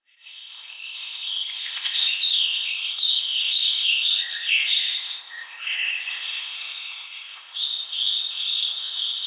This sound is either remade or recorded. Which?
remade